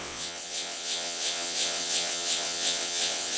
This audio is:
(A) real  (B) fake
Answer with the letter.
B